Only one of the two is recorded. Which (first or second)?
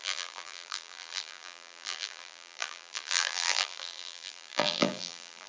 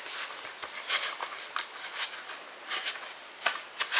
second